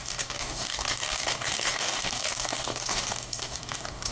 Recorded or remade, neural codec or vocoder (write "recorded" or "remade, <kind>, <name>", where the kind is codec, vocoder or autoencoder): remade, codec, DAC